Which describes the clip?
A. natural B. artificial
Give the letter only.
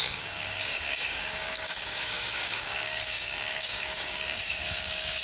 B